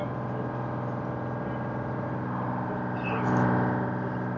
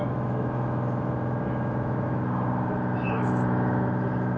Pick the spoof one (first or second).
second